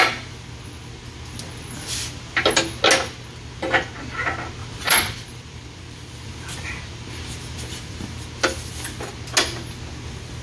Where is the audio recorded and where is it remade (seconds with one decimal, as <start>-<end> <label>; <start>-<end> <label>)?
0.0-4.6 recorded; 4.6-8.3 remade; 8.3-10.4 recorded